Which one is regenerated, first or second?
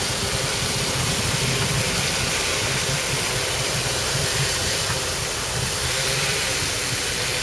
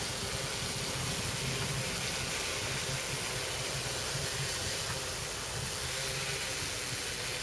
first